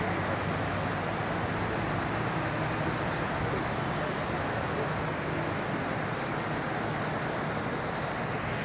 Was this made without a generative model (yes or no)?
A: yes